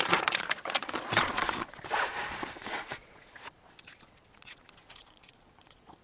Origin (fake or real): fake